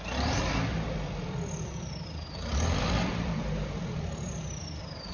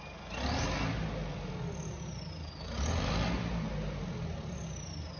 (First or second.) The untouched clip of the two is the second